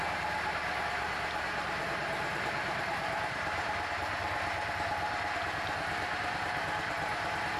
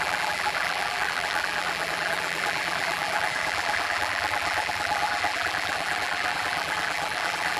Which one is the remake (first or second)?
second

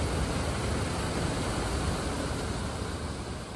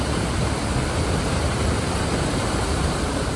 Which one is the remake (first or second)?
second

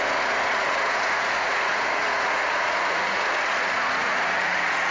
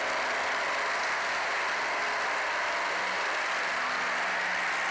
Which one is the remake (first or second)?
first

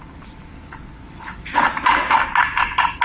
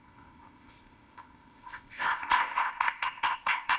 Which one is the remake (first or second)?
second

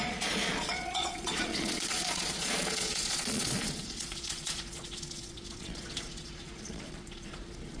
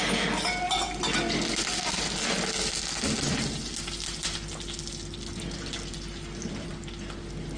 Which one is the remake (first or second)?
first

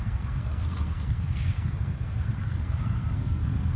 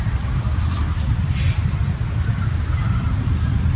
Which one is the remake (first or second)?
first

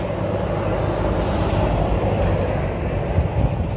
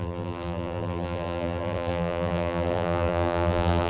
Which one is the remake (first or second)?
second